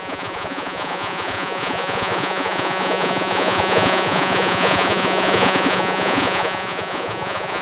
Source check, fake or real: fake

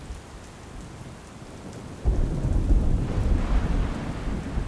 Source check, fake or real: real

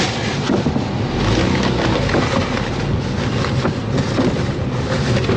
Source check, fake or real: real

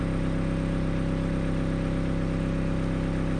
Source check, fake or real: real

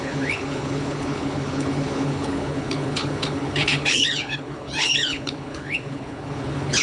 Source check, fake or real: fake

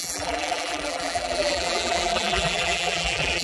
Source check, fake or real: fake